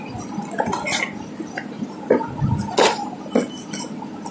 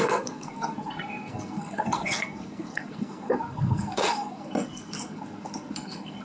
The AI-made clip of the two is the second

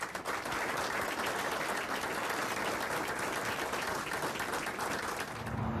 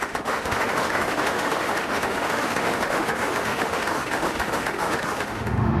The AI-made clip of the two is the second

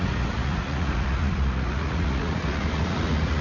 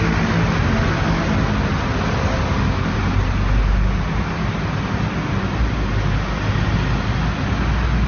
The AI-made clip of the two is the first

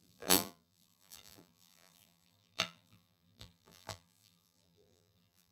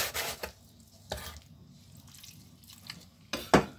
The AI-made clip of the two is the first